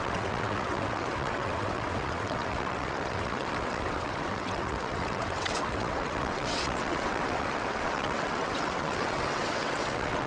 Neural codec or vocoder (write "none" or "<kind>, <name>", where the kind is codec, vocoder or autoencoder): vocoder, WaveNeXt